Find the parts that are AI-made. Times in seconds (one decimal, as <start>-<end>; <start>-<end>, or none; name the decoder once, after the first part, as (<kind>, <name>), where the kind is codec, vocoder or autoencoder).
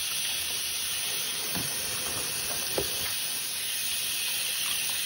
0.0-2.3 (vocoder, BigVGAN v2); 2.7-4.0